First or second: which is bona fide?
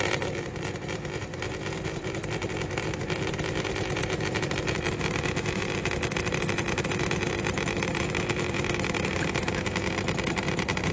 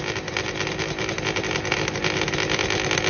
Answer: second